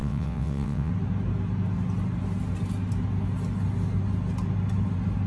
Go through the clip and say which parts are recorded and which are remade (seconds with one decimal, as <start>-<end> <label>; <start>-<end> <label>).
0.0-0.9 remade; 0.9-5.3 recorded